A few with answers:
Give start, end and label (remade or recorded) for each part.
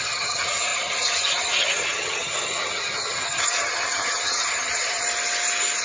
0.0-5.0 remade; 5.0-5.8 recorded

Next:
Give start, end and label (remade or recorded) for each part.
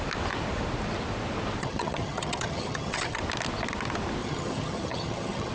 0.0-1.6 recorded; 1.6-3.2 remade; 3.2-4.2 recorded; 4.2-5.5 remade